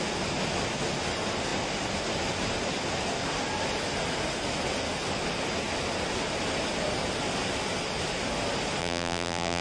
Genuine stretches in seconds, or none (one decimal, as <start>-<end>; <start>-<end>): 0.0-8.8